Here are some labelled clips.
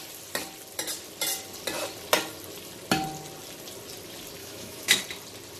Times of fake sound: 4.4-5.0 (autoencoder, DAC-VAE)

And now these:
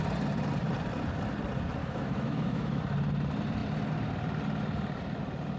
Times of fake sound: 1.8-2.8 (autoencoder, DAC-VAE)

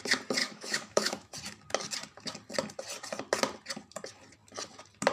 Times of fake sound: 0.4-1.3 (autoencoder, DAC-VAE)

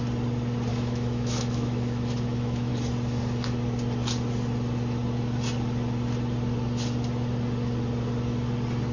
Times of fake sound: 0.7-2.7 (autoencoder, DAC-VAE)